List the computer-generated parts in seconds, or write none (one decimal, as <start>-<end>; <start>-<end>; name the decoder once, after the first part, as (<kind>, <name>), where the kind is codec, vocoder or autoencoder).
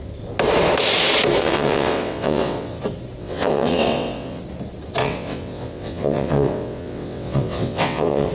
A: 1.4-2.8 (vocoder, WaveNeXt); 3.2-4.4; 5.0-8.3